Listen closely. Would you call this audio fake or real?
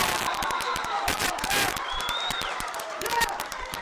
fake